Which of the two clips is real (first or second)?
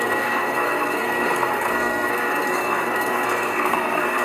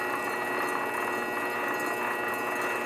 second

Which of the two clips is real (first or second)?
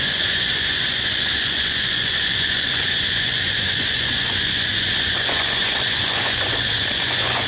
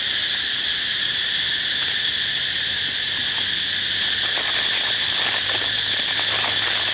second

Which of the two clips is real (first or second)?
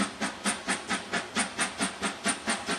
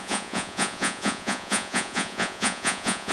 first